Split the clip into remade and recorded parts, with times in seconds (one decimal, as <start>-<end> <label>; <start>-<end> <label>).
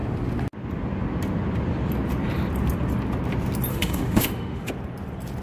0.0-3.7 recorded; 3.7-4.7 remade; 4.7-5.4 recorded